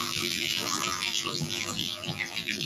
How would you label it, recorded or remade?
remade